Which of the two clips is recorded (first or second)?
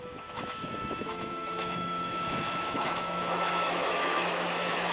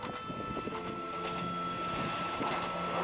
second